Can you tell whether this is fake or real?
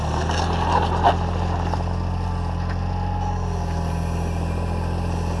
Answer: real